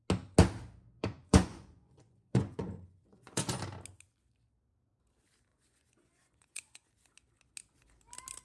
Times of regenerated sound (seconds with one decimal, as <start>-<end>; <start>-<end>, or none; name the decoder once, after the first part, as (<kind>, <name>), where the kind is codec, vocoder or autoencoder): 1.0-3.6 (vocoder, Vocos); 5.5-6.9